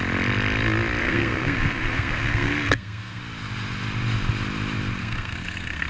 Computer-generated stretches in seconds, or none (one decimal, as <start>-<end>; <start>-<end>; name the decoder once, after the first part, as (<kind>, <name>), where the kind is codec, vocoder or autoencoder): 1.0-3.2 (codec, SNAC); 5.0-5.9